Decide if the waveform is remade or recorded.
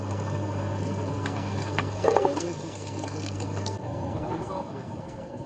remade